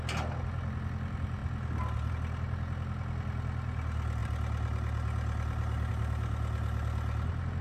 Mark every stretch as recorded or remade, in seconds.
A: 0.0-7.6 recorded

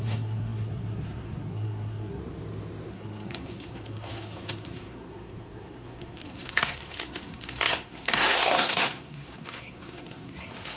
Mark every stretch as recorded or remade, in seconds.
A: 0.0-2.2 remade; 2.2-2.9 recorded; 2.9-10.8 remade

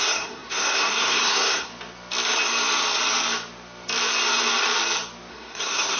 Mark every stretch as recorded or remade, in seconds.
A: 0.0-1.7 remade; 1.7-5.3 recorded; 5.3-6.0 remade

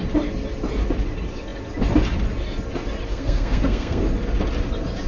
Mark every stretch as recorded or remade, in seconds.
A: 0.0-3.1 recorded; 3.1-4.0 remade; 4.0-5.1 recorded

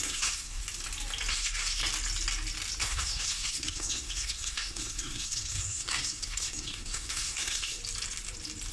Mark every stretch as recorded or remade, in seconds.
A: 0.0-0.6 remade; 0.6-1.3 recorded; 1.3-1.8 remade; 1.8-2.8 recorded; 2.8-7.8 remade; 7.8-8.7 recorded

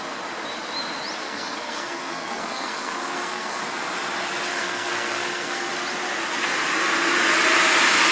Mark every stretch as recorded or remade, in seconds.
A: 0.0-1.2 recorded; 1.2-3.6 remade; 3.6-4.5 recorded; 4.5-5.7 remade; 5.7-8.1 recorded

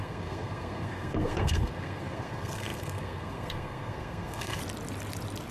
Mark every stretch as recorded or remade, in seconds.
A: 0.0-4.6 remade; 4.6-5.5 recorded

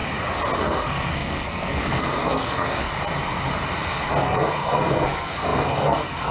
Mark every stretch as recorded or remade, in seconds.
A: 0.0-0.6 recorded; 0.6-2.9 remade; 2.9-4.2 recorded; 4.2-6.3 remade